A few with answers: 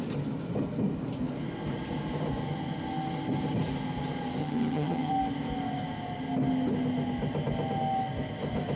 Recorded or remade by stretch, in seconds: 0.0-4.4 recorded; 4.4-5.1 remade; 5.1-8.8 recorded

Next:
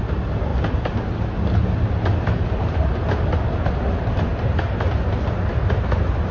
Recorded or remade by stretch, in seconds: 0.0-6.3 recorded

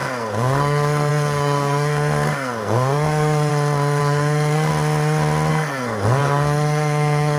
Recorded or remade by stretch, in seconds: 0.0-3.5 remade; 3.5-4.0 recorded; 4.0-4.7 remade; 4.7-5.5 recorded; 5.5-7.4 remade

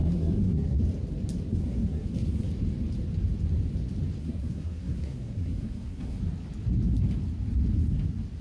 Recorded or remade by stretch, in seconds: 0.0-0.8 remade; 0.8-1.5 recorded; 1.5-2.4 remade; 2.4-4.2 recorded; 4.2-6.2 remade; 6.2-8.4 recorded

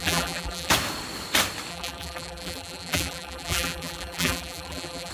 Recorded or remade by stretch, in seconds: 0.0-0.7 remade; 0.7-1.7 recorded; 1.7-5.1 remade

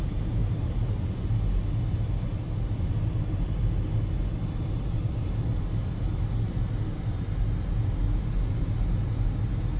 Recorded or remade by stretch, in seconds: 0.0-9.8 recorded

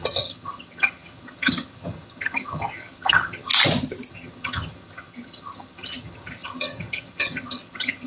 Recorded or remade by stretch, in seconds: 0.0-3.5 remade; 3.5-4.1 recorded; 4.1-8.1 remade